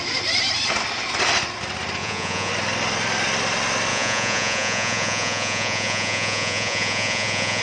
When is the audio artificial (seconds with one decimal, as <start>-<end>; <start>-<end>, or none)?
2.0-2.5; 3.9-7.6